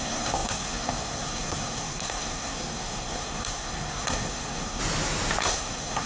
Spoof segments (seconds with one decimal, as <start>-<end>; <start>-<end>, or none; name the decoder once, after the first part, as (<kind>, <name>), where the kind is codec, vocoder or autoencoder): 0.0-4.8 (codec, SNAC); 5.4-6.1